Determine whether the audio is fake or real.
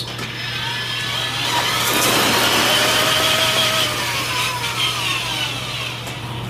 real